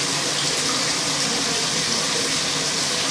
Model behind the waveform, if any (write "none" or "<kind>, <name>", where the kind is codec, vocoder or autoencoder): none